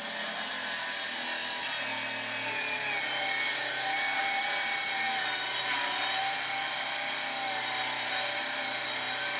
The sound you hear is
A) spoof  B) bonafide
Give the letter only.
B